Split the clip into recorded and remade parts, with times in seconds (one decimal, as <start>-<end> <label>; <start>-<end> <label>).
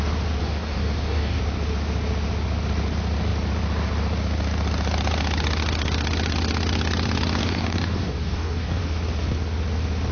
0.0-0.4 recorded; 0.4-1.4 remade; 1.4-7.4 recorded; 7.4-8.8 remade; 8.8-10.1 recorded